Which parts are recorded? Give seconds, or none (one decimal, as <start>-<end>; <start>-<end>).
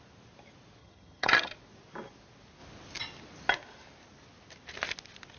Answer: 0.0-0.8; 1.5-5.4